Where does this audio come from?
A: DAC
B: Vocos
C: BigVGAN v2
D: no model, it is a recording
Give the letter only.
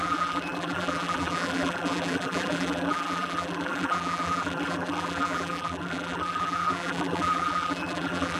C